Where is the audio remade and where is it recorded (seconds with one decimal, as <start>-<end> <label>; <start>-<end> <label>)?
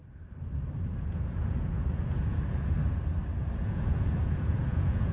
0.0-1.0 recorded; 1.0-2.8 remade; 2.8-3.4 recorded; 3.4-5.1 remade